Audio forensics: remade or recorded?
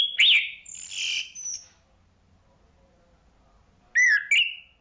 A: recorded